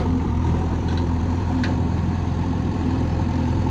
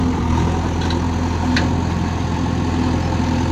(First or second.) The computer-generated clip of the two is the first